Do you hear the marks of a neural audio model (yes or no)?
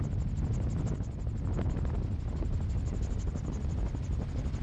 no